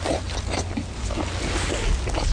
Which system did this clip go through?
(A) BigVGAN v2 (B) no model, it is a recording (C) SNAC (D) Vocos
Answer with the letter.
B